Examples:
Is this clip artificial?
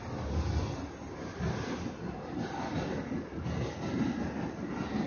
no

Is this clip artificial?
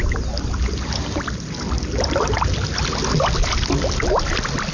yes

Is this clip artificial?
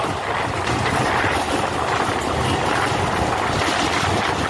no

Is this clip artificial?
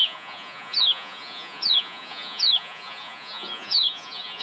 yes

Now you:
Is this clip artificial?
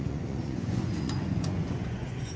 yes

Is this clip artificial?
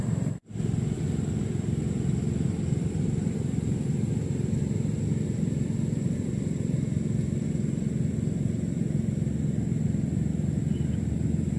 yes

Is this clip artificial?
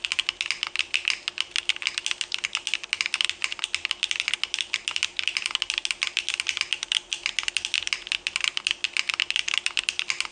no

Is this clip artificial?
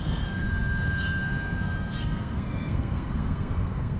yes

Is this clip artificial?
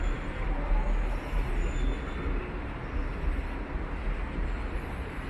no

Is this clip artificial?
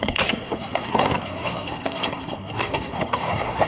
yes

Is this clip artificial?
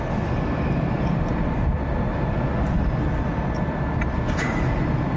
no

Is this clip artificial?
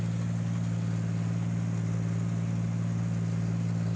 no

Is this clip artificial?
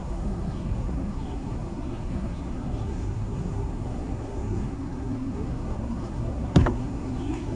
yes